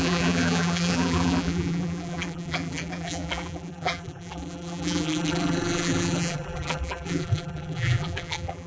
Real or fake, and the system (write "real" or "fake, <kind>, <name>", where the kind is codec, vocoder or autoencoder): fake, vocoder, BigVGAN v2